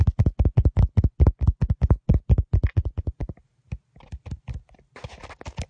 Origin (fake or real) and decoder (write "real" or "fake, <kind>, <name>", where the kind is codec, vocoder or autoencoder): real